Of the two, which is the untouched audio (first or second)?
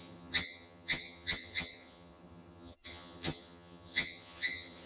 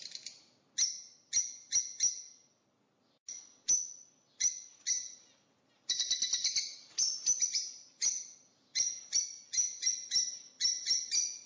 second